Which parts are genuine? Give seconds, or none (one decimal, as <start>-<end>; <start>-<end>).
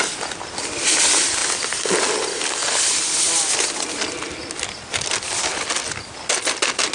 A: 0.0-6.9